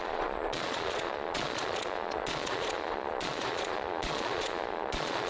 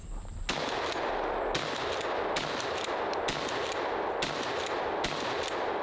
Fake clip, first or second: first